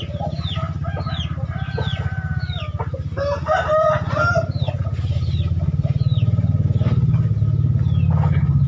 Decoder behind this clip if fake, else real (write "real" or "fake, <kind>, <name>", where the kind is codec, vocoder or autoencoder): real